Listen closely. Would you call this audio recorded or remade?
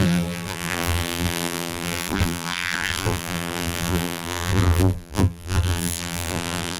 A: remade